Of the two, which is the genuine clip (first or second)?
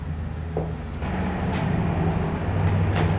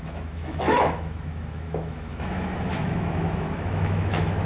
first